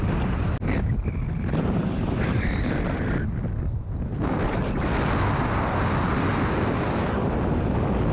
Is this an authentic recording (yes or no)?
yes